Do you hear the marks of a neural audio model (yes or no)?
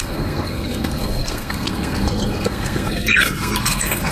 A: yes